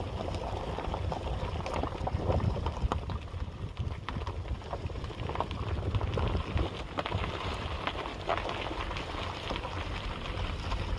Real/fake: real